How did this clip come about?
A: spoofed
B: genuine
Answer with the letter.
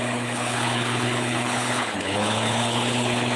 A